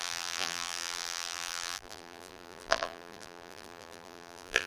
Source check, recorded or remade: remade